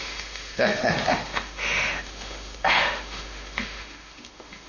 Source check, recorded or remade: remade